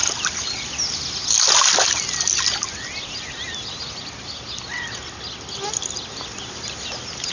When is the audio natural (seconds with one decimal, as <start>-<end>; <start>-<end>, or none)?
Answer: 0.0-7.3